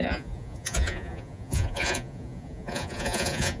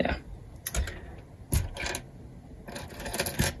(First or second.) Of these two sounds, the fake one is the first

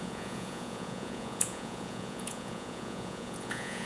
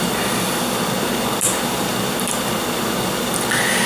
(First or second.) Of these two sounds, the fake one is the first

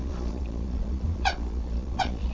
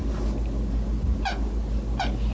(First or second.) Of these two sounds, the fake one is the first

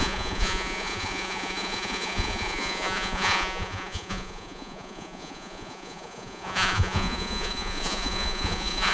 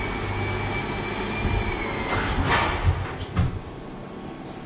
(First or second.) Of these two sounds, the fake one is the first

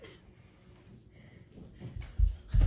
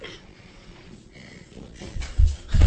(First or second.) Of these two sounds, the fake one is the second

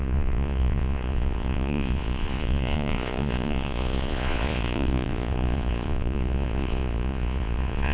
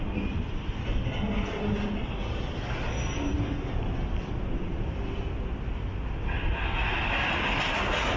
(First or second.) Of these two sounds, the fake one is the first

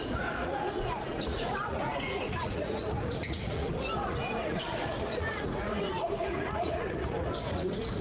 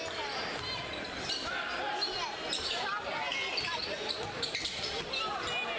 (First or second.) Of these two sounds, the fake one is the first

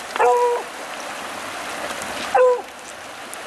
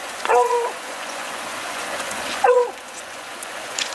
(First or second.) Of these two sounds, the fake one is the second